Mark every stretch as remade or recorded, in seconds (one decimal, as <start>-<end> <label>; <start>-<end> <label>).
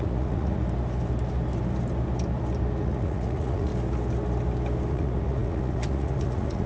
0.0-0.6 remade; 0.6-2.8 recorded; 2.8-3.7 remade; 3.7-4.9 recorded; 4.9-6.7 remade